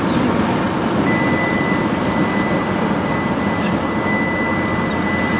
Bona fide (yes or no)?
yes